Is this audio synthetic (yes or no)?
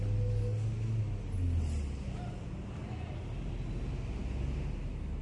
no